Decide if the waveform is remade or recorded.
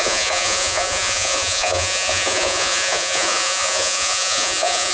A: remade